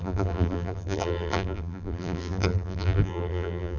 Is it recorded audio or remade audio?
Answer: remade